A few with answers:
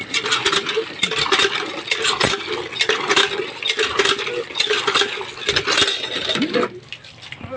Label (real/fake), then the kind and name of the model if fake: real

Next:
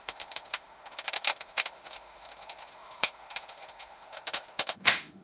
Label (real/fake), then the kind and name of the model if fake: fake, autoencoder, DAC-VAE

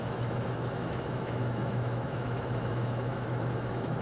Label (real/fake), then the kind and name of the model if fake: fake, autoencoder, DAC-VAE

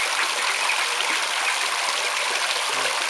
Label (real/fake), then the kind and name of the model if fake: real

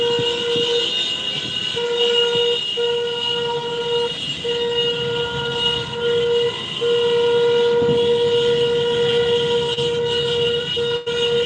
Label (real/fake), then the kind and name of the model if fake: real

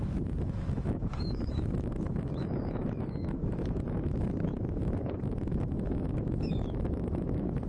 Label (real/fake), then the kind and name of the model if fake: fake, autoencoder, DAC-VAE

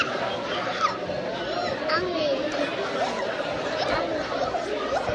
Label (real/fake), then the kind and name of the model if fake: real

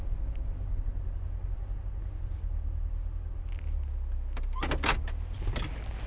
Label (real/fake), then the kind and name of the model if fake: real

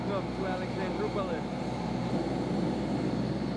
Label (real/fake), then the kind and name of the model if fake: real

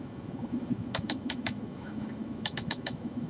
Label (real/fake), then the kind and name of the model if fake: fake, autoencoder, DAC-VAE